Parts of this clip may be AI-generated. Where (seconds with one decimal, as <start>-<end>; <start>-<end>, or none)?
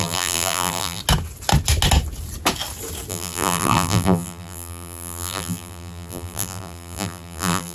0.0-1.0; 3.1-7.7